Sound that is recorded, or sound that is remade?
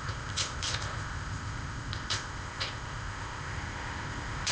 remade